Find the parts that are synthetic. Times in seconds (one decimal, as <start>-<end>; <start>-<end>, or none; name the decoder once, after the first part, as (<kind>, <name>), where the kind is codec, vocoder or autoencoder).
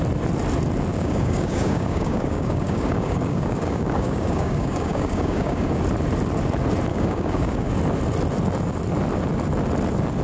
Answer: 0.9-5.8 (codec, DAC); 6.9-7.7